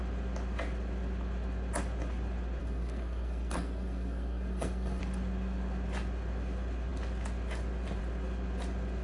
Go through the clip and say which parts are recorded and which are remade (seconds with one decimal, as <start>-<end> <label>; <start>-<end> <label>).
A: 0.0-2.6 recorded; 2.6-5.0 remade; 5.0-9.0 recorded